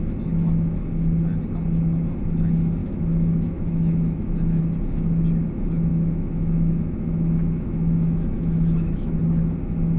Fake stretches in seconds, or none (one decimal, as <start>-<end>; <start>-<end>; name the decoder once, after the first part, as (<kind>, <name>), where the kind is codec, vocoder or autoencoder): 2.8-4.6 (autoencoder, DAC-VAE); 5.9-9.2